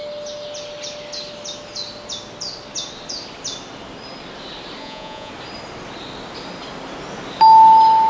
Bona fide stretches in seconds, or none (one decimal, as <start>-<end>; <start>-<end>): 0.0-4.8; 5.3-8.1